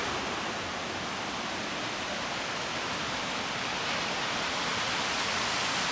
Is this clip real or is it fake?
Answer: real